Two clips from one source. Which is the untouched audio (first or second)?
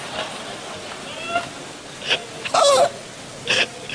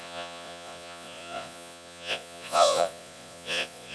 first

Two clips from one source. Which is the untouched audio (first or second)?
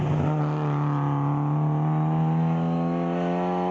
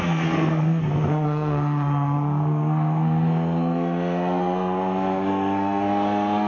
first